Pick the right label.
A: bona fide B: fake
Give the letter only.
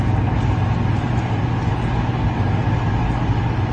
A